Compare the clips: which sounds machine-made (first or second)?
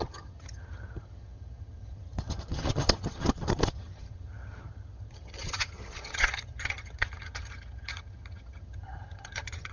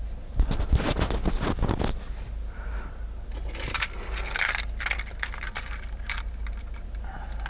first